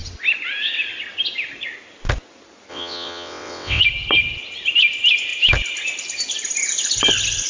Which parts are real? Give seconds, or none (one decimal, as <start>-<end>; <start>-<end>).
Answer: 0.0-2.7; 3.8-7.5